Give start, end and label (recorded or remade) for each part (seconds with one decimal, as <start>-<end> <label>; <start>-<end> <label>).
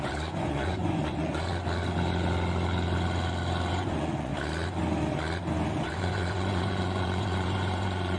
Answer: 0.0-1.5 remade; 1.5-3.7 recorded; 3.7-4.3 remade; 4.3-5.8 recorded; 5.8-8.2 remade